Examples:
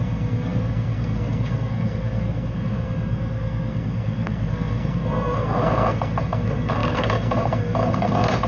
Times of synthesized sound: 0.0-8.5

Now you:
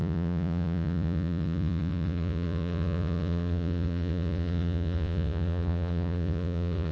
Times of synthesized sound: 0.0-6.9

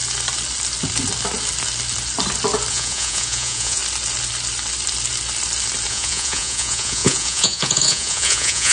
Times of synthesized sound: 2.7-3.8; 5.9-8.7

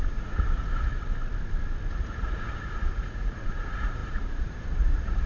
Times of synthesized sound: 0.0-0.9; 1.9-5.3

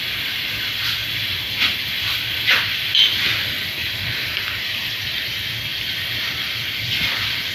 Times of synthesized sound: 1.0-5.0; 5.7-7.5